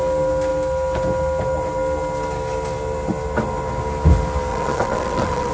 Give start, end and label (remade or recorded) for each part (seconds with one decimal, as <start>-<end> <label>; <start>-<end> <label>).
0.0-4.5 recorded; 4.5-5.5 remade